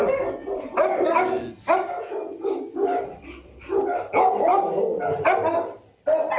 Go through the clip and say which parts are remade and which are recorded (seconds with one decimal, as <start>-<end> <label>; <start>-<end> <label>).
0.0-6.4 recorded